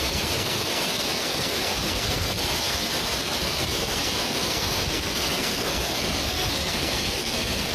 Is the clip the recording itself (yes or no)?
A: no